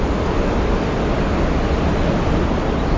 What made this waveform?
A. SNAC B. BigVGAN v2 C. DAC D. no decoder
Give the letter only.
B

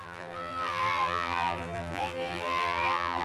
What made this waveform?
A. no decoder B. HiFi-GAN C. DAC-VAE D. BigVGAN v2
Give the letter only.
D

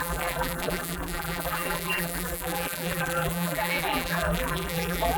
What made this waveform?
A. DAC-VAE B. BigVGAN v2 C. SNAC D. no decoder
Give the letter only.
B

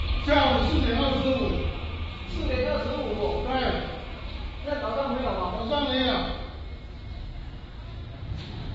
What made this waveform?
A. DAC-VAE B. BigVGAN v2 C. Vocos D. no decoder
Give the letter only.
D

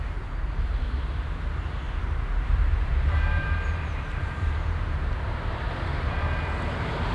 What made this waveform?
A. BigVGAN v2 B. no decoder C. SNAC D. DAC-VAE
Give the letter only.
A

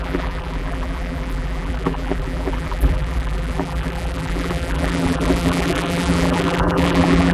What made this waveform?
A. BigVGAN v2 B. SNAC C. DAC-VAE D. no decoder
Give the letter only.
A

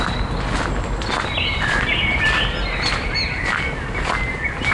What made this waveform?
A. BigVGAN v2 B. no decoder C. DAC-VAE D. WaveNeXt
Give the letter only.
B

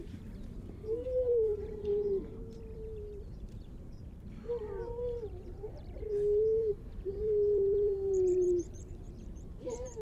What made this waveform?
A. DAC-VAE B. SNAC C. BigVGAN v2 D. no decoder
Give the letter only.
C